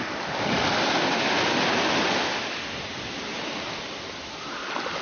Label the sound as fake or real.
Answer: real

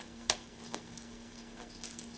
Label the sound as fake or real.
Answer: fake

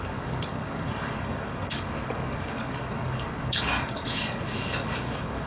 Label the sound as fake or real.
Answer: fake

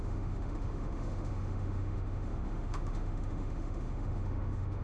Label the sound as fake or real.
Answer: fake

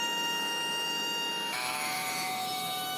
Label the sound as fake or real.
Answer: fake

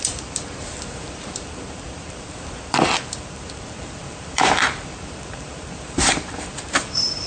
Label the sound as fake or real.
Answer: fake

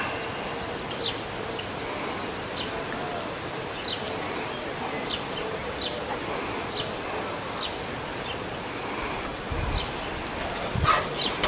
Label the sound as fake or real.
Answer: real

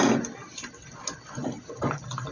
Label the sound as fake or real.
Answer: real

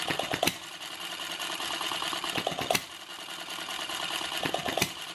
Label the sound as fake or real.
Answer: real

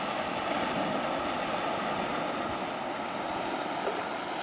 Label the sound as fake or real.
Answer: real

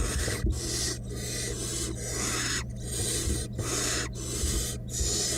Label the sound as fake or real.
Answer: real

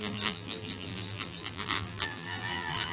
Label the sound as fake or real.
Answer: fake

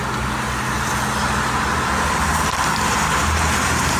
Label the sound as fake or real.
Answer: real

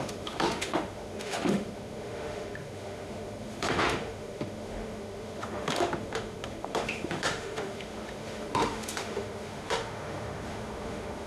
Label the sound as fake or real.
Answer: fake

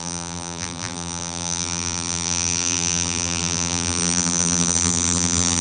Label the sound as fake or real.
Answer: fake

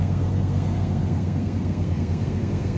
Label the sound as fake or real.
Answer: fake